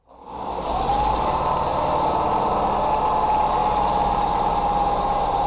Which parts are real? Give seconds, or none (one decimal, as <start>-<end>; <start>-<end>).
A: 0.0-1.7; 2.5-3.6